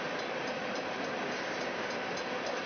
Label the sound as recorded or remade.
recorded